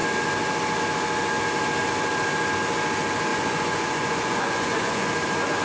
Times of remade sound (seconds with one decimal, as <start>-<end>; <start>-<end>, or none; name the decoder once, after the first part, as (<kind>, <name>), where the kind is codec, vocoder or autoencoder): 3.3-5.1 (vocoder, Vocos)